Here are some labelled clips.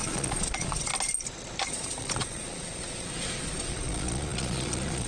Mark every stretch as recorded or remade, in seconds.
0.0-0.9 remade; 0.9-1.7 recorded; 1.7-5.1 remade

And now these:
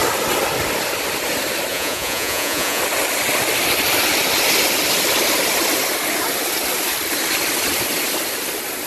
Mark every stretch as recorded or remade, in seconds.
0.0-1.7 recorded; 1.7-2.8 remade; 2.8-8.9 recorded

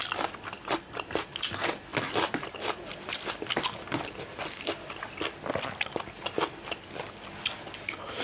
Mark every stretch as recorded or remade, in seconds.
0.0-8.2 recorded

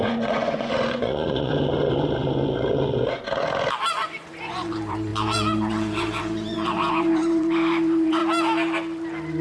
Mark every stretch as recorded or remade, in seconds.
0.0-1.5 remade; 1.5-3.9 recorded; 3.9-8.2 remade; 8.2-9.4 recorded

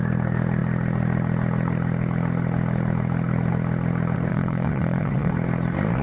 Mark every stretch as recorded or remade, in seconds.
0.0-4.3 recorded; 4.3-5.3 remade; 5.3-6.0 recorded

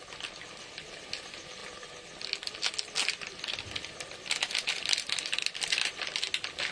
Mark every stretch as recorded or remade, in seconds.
0.0-6.7 recorded